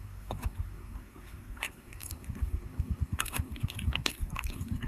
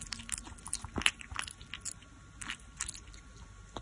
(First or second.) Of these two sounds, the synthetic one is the first